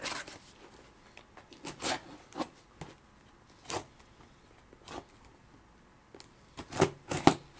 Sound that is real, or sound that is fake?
real